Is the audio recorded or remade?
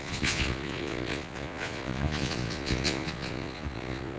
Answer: remade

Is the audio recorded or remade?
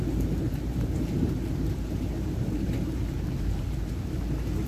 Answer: remade